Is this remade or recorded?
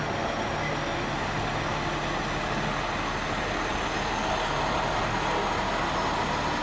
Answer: recorded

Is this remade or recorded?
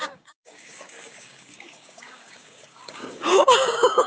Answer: remade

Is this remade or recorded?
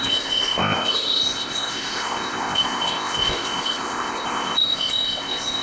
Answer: remade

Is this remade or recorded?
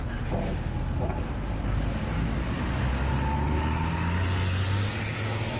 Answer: recorded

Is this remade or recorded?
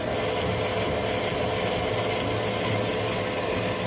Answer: recorded